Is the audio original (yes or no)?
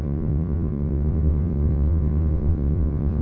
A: no